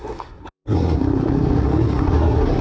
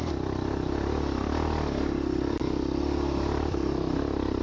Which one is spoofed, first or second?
first